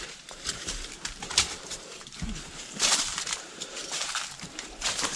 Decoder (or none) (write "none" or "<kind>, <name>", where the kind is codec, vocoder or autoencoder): vocoder, BigVGAN v2